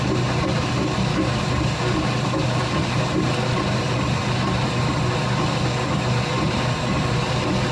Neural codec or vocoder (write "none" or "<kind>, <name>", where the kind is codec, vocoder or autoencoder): none